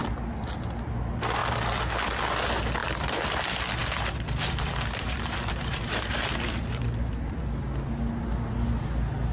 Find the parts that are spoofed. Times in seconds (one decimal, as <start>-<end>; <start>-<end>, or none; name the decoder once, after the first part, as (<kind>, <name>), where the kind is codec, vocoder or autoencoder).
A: 1.4-2.2 (vocoder, BigVGAN v2); 2.8-3.3; 3.8-7.4